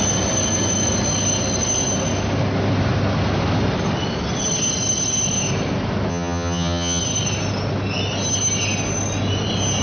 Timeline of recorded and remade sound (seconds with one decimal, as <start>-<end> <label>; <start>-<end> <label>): 0.0-6.1 recorded; 6.1-7.0 remade; 7.0-9.8 recorded